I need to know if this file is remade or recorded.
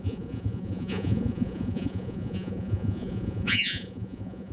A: remade